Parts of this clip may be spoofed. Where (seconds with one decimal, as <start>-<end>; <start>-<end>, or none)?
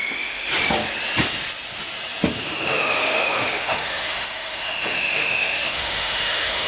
0.0-0.5; 2.4-6.7